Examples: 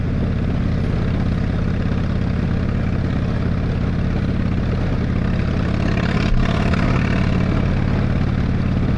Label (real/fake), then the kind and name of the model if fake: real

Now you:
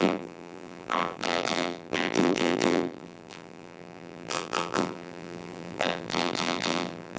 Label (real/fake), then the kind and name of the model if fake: fake, vocoder, BigVGAN v2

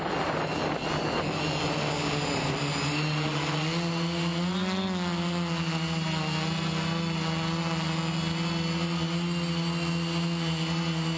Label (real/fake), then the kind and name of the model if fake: real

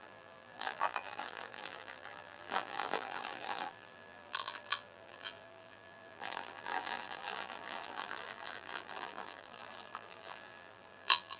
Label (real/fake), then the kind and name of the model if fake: fake, vocoder, BigVGAN v2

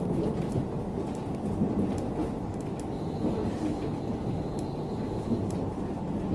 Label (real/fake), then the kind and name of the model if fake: real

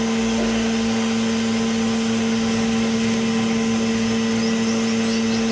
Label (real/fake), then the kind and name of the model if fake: real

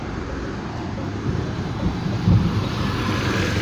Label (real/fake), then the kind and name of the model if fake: fake, vocoder, BigVGAN v2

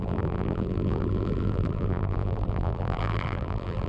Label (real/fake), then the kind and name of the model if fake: fake, vocoder, BigVGAN v2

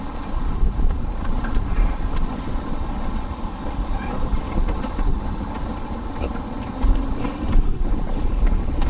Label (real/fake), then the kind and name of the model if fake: fake, vocoder, BigVGAN v2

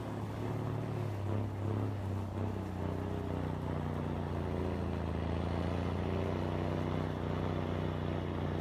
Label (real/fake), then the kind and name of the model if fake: real